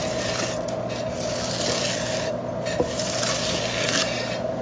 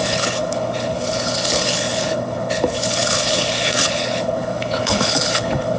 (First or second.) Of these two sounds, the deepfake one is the second